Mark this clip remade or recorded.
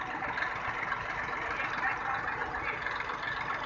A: recorded